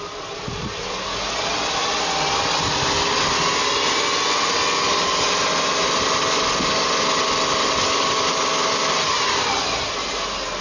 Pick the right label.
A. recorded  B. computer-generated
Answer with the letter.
A